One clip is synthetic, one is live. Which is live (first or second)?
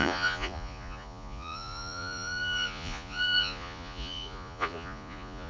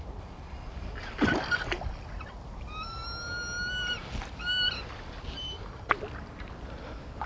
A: second